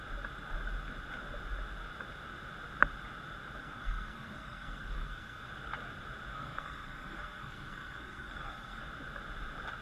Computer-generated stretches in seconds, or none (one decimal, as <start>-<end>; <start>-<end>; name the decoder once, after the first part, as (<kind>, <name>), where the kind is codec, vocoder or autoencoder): 3.6-5.5 (codec, SNAC); 6.3-8.8